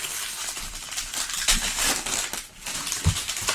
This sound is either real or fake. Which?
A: fake